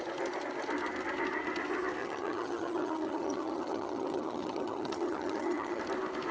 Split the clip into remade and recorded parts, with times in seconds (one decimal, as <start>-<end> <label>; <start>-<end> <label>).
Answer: 0.0-2.0 recorded; 2.0-5.8 remade; 5.8-6.3 recorded